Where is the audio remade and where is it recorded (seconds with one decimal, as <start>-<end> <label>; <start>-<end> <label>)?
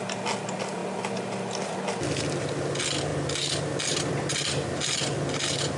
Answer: 0.0-5.8 recorded